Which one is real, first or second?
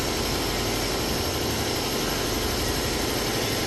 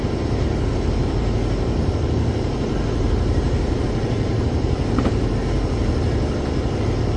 first